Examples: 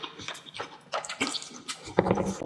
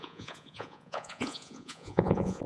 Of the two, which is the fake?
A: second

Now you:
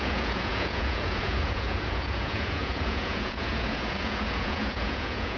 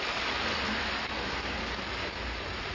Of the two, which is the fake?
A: first